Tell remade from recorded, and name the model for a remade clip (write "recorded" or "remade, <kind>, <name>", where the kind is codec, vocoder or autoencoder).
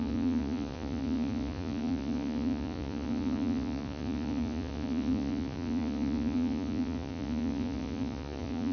remade, vocoder, Vocos